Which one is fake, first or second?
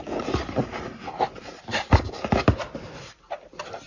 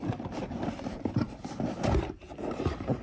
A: second